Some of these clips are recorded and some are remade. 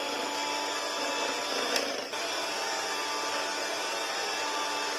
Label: recorded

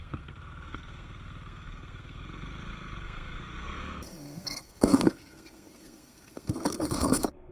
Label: remade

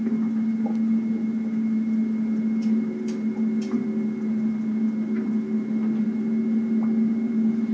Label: recorded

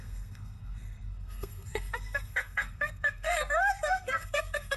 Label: remade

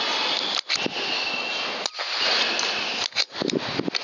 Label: recorded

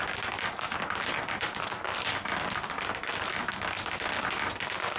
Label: recorded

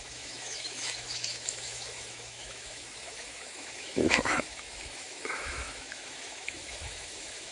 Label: remade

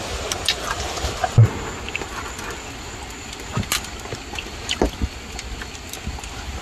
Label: recorded